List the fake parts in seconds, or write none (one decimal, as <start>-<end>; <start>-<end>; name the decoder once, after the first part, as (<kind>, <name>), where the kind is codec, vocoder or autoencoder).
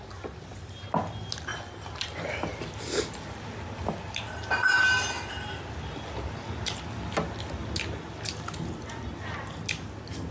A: none